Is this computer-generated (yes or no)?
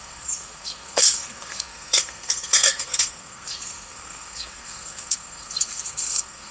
yes